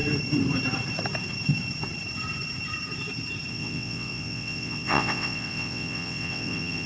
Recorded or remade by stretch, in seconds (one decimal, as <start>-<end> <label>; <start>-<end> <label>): 0.0-3.5 recorded; 3.5-6.9 remade